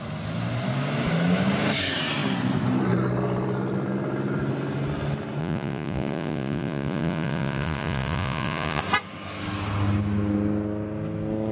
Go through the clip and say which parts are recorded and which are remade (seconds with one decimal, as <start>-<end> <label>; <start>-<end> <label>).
0.0-5.4 recorded; 5.4-8.8 remade; 8.8-11.5 recorded